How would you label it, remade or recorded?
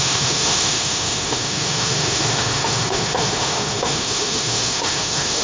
remade